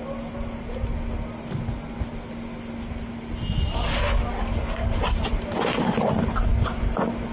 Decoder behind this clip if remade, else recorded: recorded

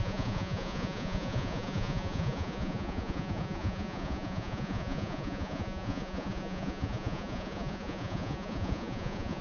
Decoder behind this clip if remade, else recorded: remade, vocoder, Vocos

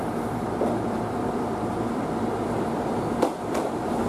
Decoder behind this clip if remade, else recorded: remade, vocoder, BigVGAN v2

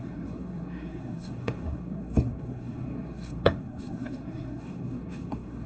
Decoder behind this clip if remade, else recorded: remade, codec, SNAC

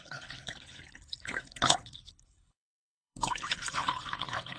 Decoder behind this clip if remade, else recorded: remade, codec, HILCodec